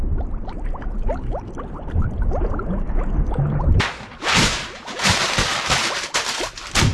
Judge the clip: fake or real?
real